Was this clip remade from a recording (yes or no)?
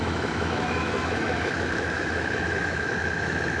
yes